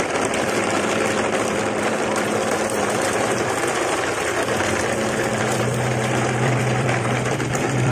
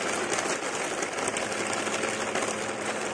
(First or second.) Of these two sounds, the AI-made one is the first